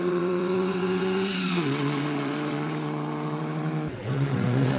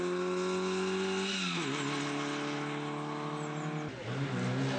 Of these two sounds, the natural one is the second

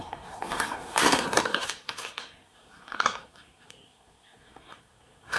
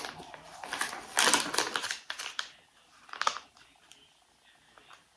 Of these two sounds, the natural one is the second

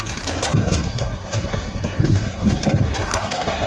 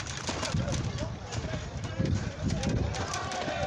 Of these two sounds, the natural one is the second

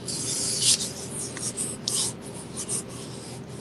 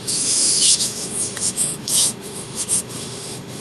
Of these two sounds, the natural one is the first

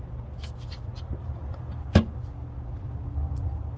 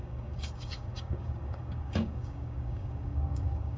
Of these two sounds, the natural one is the first